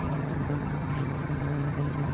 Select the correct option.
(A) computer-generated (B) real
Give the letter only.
A